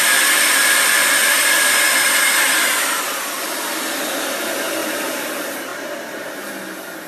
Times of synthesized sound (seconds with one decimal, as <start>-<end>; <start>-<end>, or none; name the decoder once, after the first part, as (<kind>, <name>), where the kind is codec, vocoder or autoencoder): 4.8-5.3 (vocoder, BigVGAN v2); 5.7-6.5